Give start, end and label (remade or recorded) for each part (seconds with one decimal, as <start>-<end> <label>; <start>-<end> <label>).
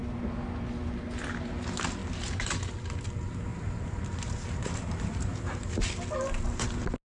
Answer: 0.0-2.0 recorded; 2.0-2.6 remade; 2.6-3.5 recorded; 3.5-5.3 remade; 5.3-7.1 recorded